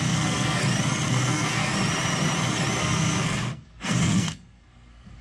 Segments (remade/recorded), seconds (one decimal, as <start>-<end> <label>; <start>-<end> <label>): 0.0-0.6 remade; 0.6-1.1 recorded; 1.1-1.7 remade; 1.7-2.8 recorded; 2.8-5.2 remade